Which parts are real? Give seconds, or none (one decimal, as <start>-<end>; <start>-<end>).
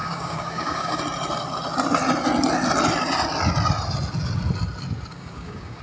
1.0-5.1